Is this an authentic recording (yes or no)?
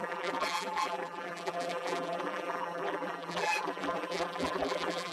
no